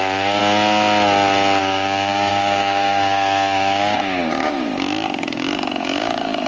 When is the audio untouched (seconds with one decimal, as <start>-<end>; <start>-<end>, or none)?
0.4-1.6